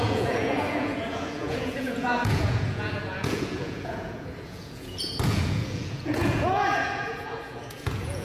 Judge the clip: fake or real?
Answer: fake